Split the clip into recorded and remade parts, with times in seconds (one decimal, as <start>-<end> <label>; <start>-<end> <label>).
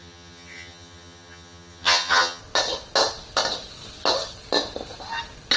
0.0-2.4 remade; 2.4-5.6 recorded